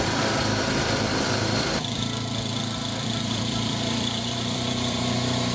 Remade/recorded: remade